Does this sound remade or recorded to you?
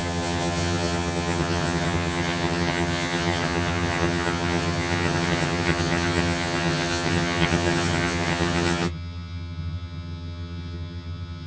remade